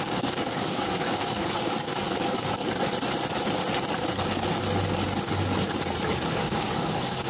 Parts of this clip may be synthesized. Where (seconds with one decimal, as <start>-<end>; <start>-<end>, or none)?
0.0-2.6; 6.3-7.3